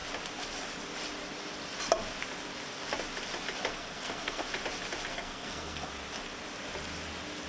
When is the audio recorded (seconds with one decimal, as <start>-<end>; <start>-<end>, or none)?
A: 0.0-3.7; 4.5-5.1; 5.9-7.5